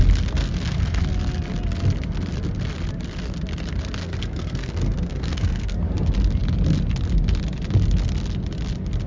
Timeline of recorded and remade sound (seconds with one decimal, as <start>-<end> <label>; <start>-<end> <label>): 0.0-0.4 recorded; 0.4-1.0 remade; 1.0-4.0 recorded; 4.0-5.8 remade; 5.8-9.1 recorded